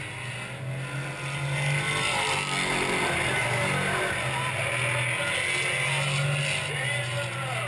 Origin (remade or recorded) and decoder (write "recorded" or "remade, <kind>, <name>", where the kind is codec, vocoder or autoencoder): recorded